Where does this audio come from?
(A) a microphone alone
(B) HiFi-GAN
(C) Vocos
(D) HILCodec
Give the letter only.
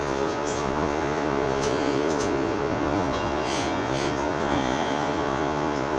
C